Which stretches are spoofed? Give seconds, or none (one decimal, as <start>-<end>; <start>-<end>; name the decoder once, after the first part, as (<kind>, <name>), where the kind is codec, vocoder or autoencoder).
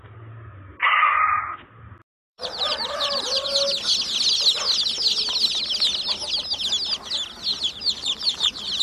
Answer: 2.0-3.2 (vocoder, BigVGAN v2); 7.5-8.8